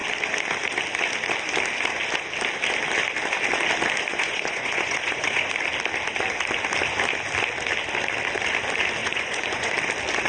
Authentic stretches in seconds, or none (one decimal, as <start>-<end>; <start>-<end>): 0.0-4.1; 5.5-9.0; 9.7-10.3